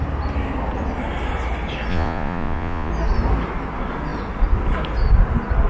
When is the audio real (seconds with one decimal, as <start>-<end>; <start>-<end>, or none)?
0.0-1.9; 2.9-5.7